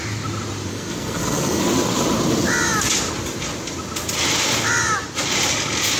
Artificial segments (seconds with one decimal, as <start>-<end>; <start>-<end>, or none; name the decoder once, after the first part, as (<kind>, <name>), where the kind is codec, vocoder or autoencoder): 0.7-1.6 (codec, SNAC)